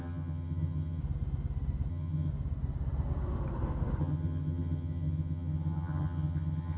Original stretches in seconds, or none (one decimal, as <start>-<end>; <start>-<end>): 1.0-1.9; 2.3-4.0